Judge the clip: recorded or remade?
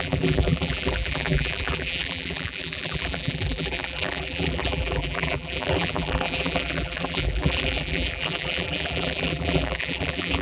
remade